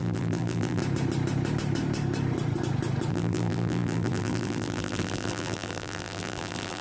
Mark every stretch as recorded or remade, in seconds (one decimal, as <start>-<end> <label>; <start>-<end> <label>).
0.0-0.8 remade; 0.8-3.1 recorded; 3.1-6.8 remade